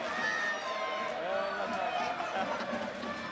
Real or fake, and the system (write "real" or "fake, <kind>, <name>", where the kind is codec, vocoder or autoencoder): real